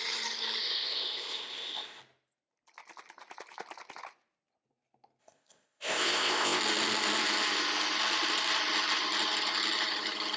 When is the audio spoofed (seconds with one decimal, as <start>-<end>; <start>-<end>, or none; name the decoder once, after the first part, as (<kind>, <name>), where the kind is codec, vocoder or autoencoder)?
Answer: 0.6-2.0 (codec, ZipCodec); 5.2-6.6